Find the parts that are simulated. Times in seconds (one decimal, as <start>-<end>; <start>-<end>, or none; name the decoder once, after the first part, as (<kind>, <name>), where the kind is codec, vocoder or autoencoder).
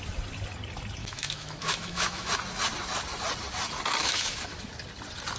1.0-2.3 (autoencoder, DAC-VAE); 4.0-4.7